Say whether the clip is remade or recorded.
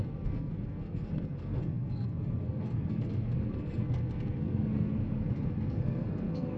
remade